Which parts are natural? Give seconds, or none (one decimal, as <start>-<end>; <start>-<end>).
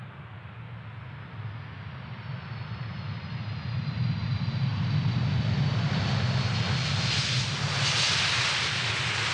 0.0-9.3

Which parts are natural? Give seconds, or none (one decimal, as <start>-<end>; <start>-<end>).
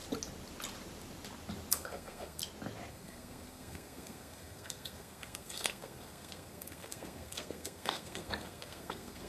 0.0-1.7; 2.4-2.9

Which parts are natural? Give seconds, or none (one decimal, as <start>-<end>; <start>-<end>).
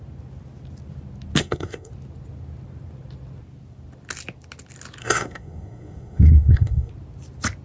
0.0-1.4; 1.9-5.0; 6.9-7.6